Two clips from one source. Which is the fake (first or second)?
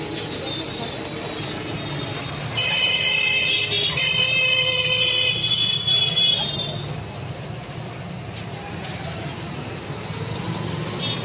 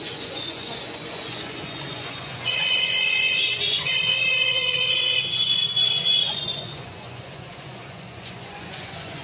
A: second